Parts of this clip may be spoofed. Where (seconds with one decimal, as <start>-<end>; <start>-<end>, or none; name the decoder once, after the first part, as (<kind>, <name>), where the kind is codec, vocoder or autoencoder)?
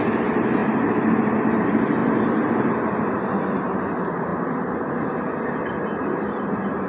none